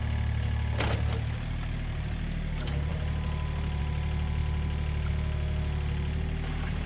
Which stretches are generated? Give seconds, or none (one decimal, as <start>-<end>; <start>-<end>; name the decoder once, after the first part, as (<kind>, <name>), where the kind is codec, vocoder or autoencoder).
none